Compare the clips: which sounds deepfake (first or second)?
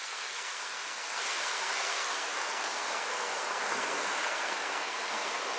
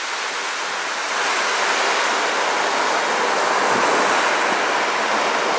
first